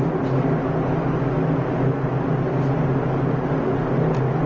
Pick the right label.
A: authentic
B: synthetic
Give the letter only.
A